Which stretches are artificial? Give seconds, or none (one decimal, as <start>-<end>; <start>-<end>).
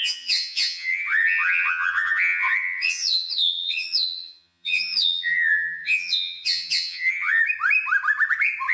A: 0.0-7.4